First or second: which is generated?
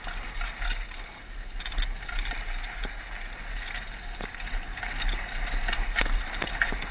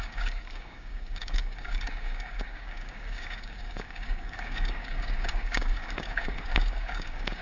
second